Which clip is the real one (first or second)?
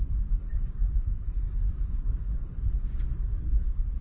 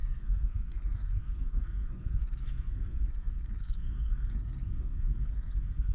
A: first